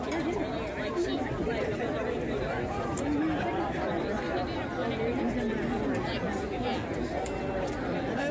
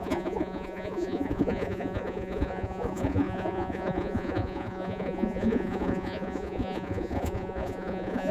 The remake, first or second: second